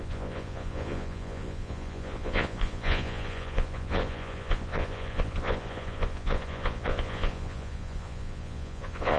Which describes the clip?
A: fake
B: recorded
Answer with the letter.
A